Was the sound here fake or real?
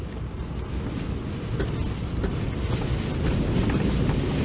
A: real